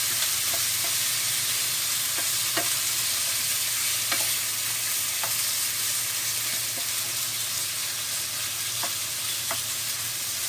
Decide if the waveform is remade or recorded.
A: recorded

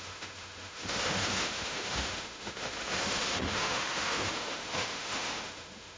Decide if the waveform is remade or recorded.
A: remade